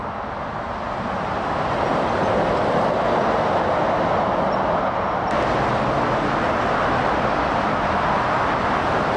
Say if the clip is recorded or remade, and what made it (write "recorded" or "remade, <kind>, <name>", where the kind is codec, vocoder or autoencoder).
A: recorded